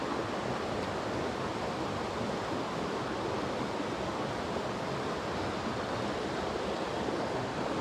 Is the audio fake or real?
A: real